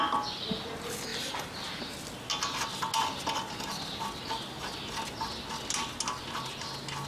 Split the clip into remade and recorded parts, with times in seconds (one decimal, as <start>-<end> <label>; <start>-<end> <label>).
0.0-1.1 recorded; 1.1-1.8 remade; 1.8-7.1 recorded